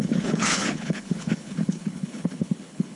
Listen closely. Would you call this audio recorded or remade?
remade